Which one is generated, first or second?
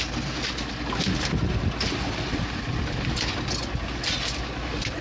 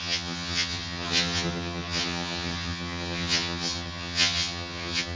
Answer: second